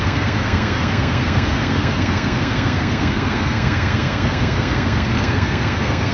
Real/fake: fake